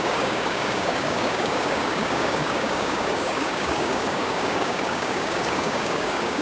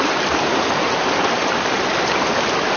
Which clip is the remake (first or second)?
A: first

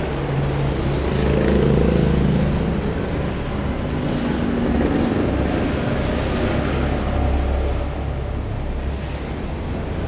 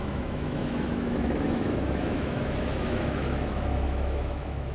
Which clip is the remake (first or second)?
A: second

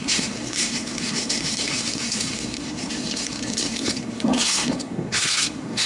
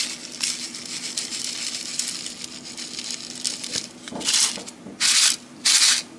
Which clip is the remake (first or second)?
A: first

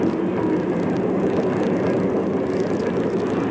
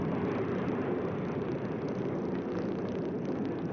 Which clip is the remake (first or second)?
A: second